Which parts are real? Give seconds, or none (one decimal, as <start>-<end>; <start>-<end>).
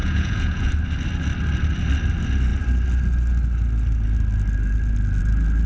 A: 0.7-5.7